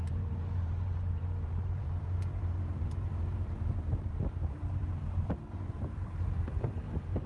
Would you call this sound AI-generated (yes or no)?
yes